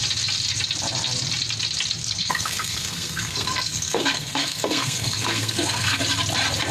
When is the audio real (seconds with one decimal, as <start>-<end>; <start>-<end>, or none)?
0.0-2.0; 6.0-6.7